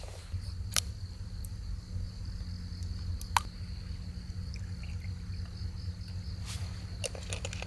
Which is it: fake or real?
real